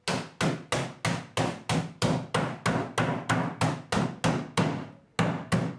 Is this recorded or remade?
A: recorded